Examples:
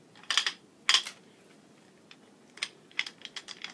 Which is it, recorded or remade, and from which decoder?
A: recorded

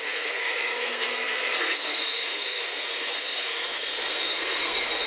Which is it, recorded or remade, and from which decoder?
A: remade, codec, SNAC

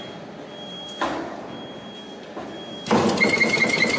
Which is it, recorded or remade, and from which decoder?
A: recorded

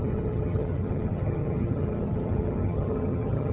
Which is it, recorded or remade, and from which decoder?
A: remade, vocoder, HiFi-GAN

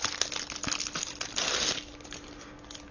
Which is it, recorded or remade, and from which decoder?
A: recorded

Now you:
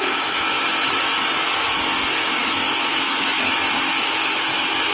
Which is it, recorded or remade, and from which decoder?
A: remade, autoencoder, DAC-VAE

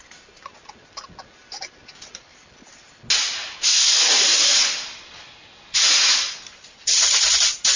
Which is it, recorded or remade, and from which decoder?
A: recorded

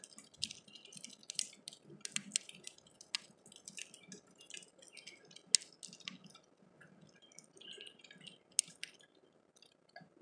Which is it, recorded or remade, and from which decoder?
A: recorded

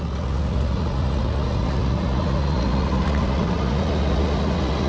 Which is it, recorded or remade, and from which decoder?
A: remade, vocoder, Vocos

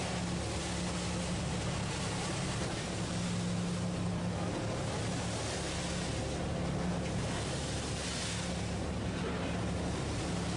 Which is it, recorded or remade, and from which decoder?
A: recorded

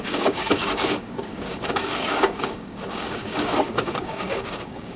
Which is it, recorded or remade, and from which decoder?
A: remade, codec, DAC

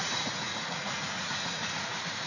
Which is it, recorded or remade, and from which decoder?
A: remade, vocoder, Vocos